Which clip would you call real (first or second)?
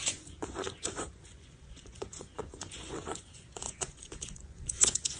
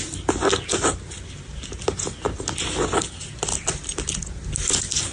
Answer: second